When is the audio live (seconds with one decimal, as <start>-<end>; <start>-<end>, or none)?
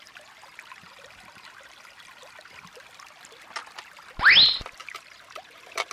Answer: 0.0-4.8